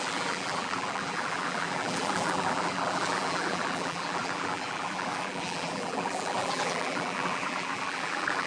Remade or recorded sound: remade